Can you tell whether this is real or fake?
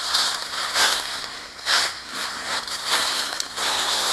fake